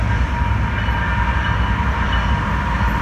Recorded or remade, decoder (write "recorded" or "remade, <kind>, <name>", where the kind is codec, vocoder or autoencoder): recorded